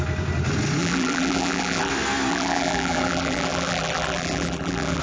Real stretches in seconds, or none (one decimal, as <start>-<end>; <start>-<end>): 0.0-0.8; 1.9-2.3

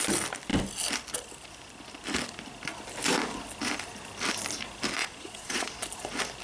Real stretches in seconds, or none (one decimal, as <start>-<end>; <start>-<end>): 0.0-5.0; 5.7-6.4